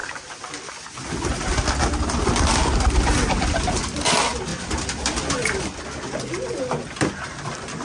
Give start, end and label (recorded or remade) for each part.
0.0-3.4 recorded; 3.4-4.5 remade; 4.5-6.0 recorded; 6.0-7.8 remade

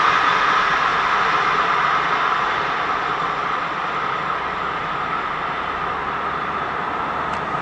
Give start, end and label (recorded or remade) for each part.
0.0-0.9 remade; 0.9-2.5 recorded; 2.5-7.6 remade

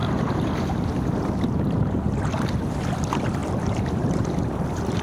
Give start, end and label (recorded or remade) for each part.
0.0-1.8 remade; 1.8-3.4 recorded; 3.4-4.4 remade; 4.4-5.0 recorded